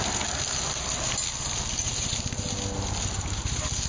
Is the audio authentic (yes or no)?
yes